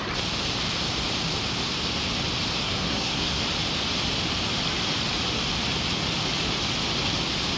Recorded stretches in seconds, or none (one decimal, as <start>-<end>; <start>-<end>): 0.0-2.6; 3.4-7.6